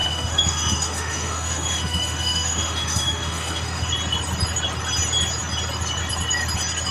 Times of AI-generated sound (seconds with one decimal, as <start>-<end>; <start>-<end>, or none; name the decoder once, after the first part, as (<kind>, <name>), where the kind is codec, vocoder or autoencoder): 0.0-3.9 (autoencoder, DAC-VAE)